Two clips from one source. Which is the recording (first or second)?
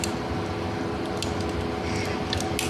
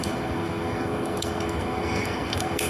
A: first